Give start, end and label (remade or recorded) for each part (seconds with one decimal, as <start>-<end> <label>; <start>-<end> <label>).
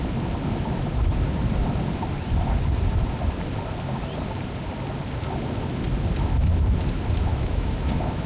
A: 0.0-7.3 recorded; 7.3-8.3 remade